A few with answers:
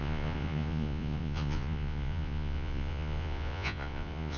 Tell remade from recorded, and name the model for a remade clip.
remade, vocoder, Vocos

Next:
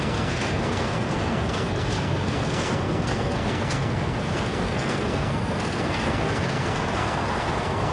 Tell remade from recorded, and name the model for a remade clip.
remade, codec, SNAC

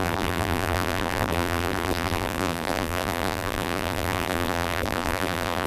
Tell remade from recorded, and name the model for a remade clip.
remade, vocoder, BigVGAN v2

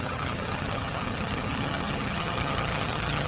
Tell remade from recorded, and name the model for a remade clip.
remade, vocoder, HiFi-GAN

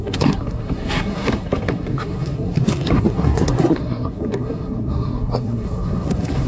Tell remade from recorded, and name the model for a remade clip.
remade, codec, SNAC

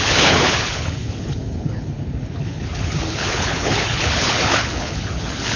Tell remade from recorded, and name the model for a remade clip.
remade, codec, HILCodec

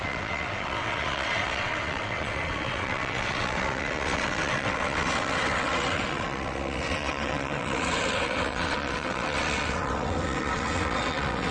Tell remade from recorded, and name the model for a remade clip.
remade, vocoder, WaveNeXt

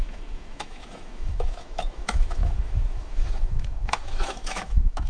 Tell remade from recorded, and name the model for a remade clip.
remade, autoencoder, DAC-VAE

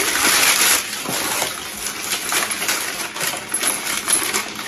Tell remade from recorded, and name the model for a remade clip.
recorded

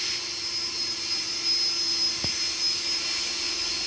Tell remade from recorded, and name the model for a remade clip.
recorded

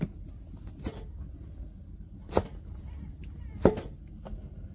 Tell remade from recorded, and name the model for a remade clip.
recorded